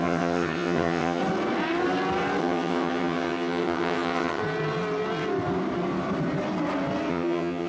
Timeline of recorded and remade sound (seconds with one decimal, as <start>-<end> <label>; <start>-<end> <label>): 0.0-1.2 remade; 1.2-2.4 recorded; 2.4-4.4 remade; 4.4-7.1 recorded; 7.1-7.7 remade